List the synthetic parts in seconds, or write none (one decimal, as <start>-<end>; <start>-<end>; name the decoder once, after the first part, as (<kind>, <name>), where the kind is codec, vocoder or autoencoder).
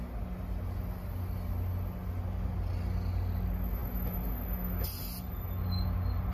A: none